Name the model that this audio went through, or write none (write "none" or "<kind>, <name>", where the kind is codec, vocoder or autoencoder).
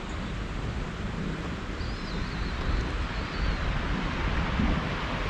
none